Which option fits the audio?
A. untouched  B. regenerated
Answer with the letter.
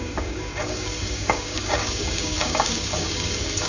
B